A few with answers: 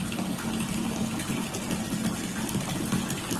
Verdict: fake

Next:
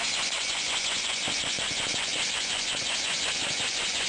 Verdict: fake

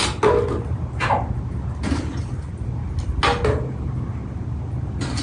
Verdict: real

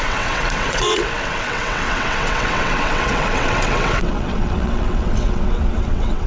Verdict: fake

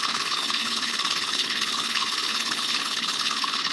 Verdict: fake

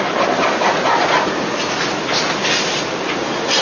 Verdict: real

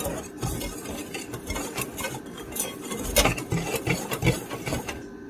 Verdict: real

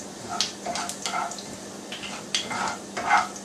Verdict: real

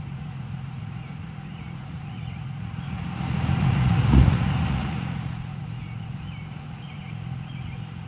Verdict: fake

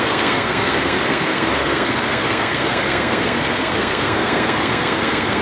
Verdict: fake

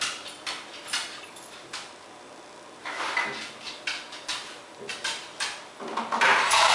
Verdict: real